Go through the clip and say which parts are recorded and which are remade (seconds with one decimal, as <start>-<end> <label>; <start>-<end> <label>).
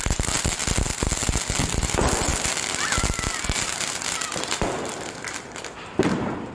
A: 0.0-1.2 recorded; 1.2-1.9 remade; 1.9-2.3 recorded; 2.3-6.5 remade